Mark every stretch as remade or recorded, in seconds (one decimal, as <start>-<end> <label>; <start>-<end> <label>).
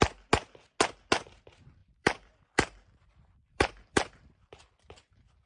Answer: 0.0-1.8 recorded; 1.8-5.1 remade; 5.1-5.5 recorded